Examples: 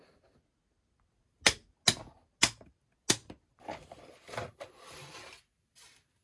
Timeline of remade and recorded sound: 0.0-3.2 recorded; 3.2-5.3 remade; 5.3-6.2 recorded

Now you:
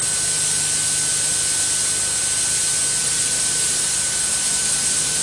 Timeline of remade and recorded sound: 0.0-3.0 recorded; 3.0-5.2 remade

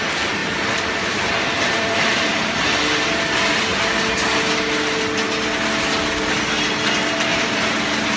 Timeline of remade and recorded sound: 0.0-0.4 recorded; 0.4-2.6 remade; 2.6-7.3 recorded; 7.3-8.2 remade

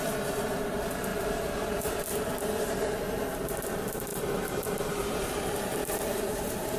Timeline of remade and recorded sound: 0.0-1.1 recorded; 1.1-3.4 remade; 3.4-4.1 recorded; 4.1-5.3 remade; 5.3-5.7 recorded; 5.7-6.8 remade

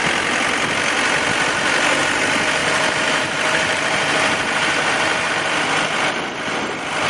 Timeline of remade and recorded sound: 0.0-2.6 recorded; 2.6-5.3 remade; 5.3-7.1 recorded

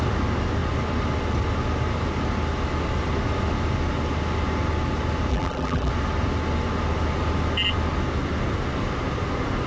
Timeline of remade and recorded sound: 0.0-5.3 recorded; 5.3-5.9 remade; 5.9-9.7 recorded